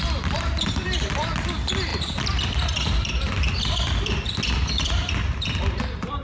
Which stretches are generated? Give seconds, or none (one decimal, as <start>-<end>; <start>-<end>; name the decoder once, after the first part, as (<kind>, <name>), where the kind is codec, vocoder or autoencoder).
0.0-6.2 (vocoder, BigVGAN v2)

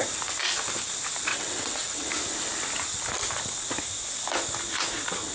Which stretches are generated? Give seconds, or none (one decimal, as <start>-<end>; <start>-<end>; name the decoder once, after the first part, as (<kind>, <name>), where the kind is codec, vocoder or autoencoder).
1.3-2.1 (vocoder, WaveNeXt)

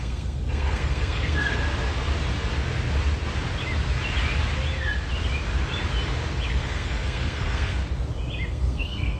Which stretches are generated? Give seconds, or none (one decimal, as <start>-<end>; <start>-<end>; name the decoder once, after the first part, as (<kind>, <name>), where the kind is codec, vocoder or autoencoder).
0.0-1.6 (codec, SNAC); 6.5-7.8; 8.5-9.2

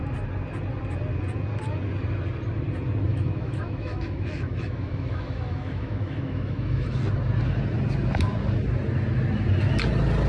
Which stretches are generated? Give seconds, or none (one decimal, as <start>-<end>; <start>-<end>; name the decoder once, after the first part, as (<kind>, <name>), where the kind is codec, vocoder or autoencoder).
3.1-7.0 (autoencoder, DAC-VAE)